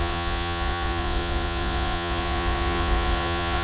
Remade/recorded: remade